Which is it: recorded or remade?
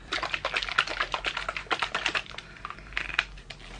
recorded